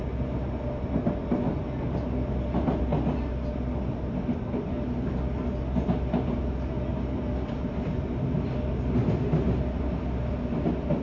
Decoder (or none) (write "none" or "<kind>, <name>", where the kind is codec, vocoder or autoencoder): none